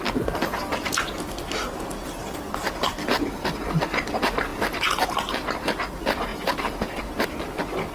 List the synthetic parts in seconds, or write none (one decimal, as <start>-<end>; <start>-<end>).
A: none